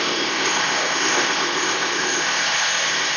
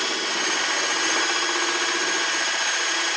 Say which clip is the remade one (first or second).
first